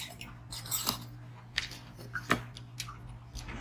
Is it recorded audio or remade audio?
recorded